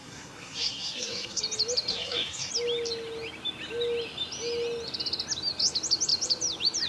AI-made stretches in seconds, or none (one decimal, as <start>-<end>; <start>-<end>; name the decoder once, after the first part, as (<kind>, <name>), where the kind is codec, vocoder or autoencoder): 0.0-1.4 (codec, SNAC); 1.9-2.5